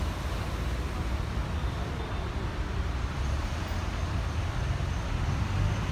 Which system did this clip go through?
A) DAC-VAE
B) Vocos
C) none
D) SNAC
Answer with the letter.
C